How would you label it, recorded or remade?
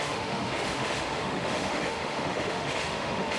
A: remade